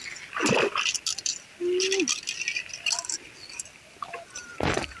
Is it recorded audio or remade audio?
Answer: recorded